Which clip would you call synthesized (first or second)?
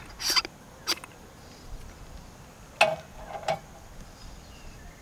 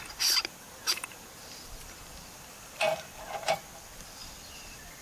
second